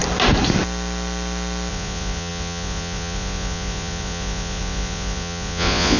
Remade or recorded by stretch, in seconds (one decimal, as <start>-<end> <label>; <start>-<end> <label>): 0.0-1.7 recorded; 1.7-6.0 remade